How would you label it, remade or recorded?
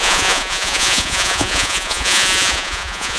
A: remade